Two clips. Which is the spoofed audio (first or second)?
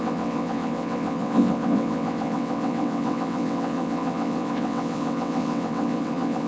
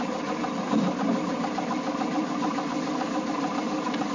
first